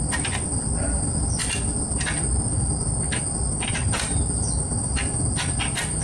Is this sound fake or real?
real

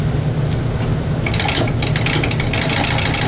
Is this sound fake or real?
real